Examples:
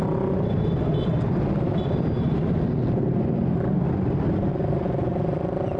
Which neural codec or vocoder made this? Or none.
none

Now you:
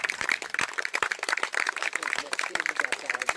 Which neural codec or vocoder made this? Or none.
vocoder, BigVGAN v2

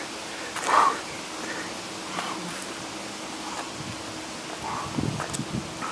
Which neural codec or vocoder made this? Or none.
none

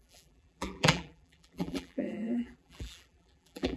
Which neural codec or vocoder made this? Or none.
vocoder, BigVGAN v2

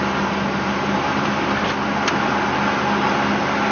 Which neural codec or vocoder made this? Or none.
none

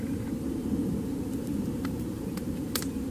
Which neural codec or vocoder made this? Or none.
vocoder, BigVGAN v2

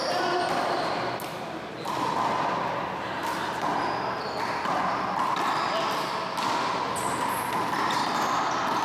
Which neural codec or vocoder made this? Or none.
none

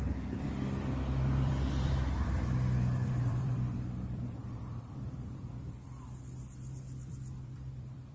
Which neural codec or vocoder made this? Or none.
vocoder, BigVGAN v2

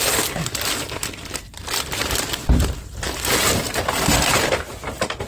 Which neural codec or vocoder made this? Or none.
none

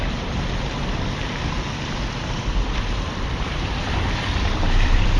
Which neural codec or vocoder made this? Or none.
vocoder, BigVGAN v2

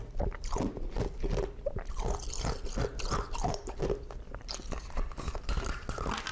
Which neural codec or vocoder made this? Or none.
none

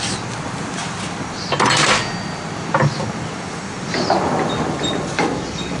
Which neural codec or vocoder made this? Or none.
none